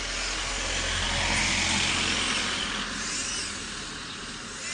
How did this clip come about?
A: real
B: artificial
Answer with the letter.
A